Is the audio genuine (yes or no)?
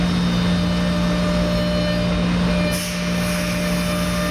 yes